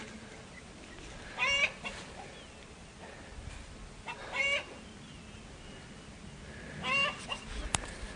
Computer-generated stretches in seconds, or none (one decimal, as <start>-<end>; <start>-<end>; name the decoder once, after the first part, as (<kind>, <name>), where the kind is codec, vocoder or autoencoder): none